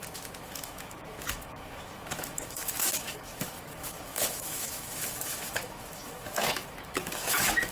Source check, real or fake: fake